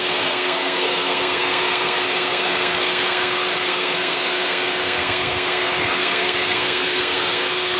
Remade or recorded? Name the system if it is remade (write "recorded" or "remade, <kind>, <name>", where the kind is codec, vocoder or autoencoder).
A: remade, codec, SNAC